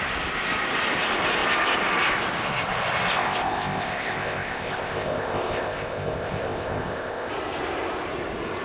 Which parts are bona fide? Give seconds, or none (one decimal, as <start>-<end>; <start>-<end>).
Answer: 0.0-3.1; 7.3-8.6